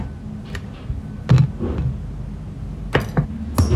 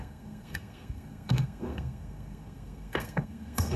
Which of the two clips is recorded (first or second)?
first